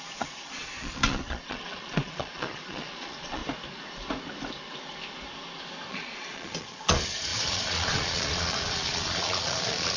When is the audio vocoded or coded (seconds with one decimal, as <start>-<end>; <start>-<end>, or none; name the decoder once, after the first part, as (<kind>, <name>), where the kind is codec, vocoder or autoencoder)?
0.0-3.4 (vocoder, Vocos); 5.9-10.0